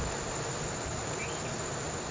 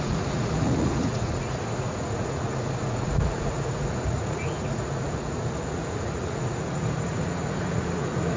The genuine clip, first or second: first